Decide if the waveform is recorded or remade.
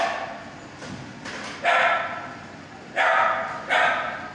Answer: recorded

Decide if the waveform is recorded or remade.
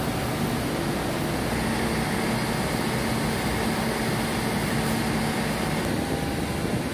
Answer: recorded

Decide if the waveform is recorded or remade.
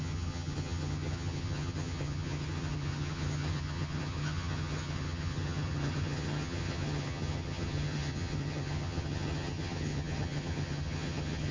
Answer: remade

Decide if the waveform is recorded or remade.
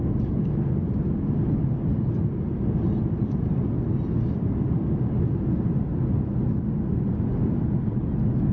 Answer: recorded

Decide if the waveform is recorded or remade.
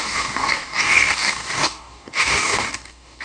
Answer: remade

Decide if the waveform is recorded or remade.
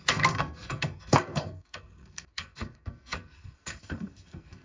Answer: remade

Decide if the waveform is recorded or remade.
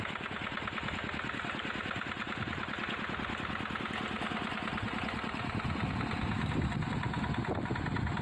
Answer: recorded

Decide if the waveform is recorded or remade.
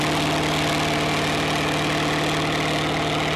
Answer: recorded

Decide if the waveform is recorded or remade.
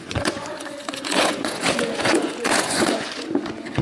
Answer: remade